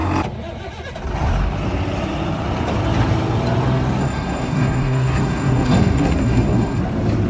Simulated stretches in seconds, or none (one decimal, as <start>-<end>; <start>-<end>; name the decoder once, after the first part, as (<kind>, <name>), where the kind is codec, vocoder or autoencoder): 4.0-6.8 (codec, SNAC)